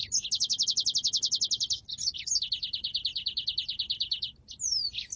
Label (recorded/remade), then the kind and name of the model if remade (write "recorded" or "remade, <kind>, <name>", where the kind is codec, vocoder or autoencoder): recorded